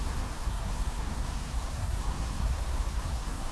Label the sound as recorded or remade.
remade